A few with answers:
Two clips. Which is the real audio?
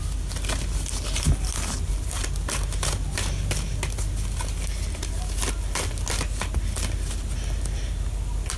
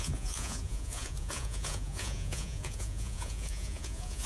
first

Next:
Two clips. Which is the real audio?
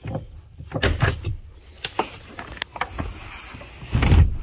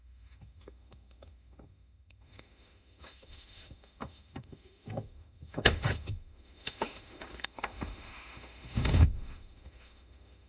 first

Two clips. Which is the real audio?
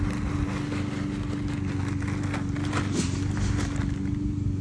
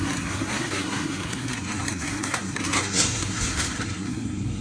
first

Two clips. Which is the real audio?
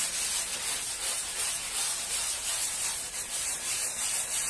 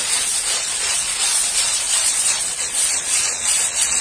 first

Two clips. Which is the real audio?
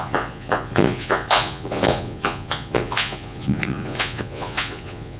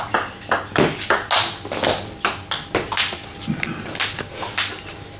second